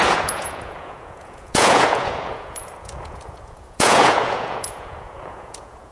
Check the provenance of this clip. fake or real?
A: fake